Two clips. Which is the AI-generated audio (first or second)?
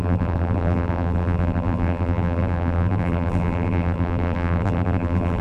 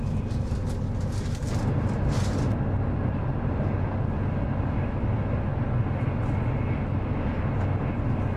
first